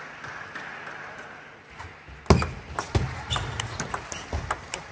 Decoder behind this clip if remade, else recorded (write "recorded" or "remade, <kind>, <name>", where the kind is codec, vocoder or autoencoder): recorded